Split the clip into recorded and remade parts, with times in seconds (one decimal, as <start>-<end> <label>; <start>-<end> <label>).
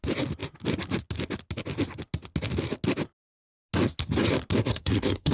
0.0-4.6 recorded; 4.6-5.3 remade